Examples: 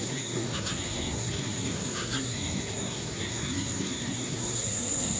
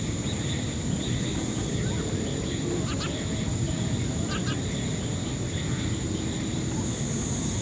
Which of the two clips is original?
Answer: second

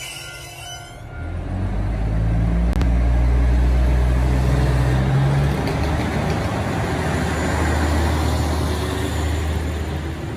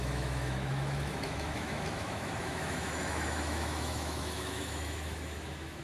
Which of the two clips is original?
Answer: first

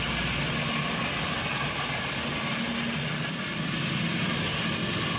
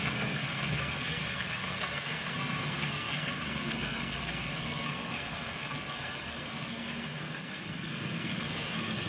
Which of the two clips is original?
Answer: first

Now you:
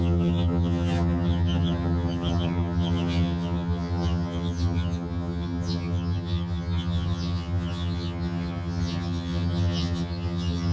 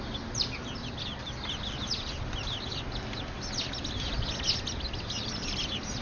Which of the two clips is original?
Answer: second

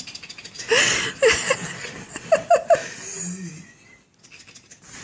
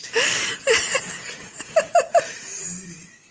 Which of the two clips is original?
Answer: first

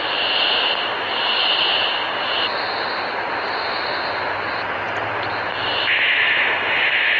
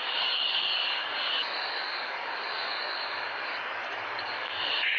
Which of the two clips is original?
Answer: first